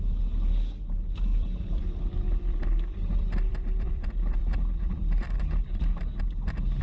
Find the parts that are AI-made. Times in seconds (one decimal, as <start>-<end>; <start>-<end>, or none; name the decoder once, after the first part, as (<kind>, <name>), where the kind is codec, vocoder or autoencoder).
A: 1.3-5.4 (vocoder, BigVGAN v2)